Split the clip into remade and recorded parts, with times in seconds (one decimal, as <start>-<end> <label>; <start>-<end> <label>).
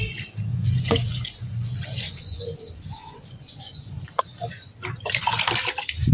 0.0-0.5 recorded; 0.5-4.2 remade; 4.2-6.1 recorded